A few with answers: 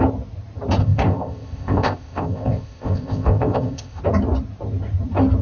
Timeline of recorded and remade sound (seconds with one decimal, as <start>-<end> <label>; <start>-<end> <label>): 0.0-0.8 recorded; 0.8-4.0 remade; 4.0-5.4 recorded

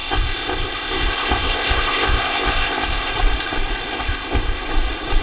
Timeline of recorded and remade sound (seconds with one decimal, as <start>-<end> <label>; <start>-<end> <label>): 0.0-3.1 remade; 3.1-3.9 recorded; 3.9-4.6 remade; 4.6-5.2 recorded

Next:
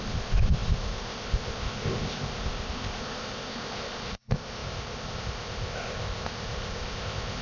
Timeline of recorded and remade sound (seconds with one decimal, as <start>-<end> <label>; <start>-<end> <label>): 0.0-7.4 remade

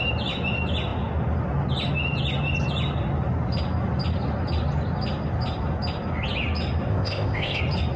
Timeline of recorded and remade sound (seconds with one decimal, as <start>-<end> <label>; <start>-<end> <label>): 0.0-6.9 recorded; 6.9-7.6 remade; 7.6-8.0 recorded

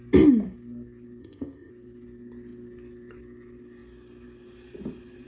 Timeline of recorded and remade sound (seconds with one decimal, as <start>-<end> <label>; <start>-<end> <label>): 0.0-1.2 recorded; 1.2-1.7 remade; 1.7-5.3 recorded

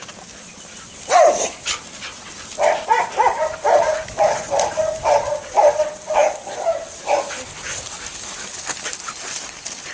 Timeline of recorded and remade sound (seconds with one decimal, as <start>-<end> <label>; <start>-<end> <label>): 0.0-9.9 recorded